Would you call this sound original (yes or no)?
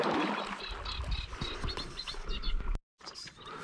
yes